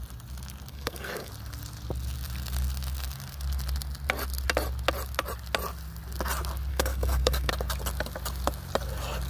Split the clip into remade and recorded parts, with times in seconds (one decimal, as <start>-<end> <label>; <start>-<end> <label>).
0.0-0.7 recorded; 0.7-1.3 remade; 1.3-6.7 recorded; 6.7-7.5 remade; 7.5-9.3 recorded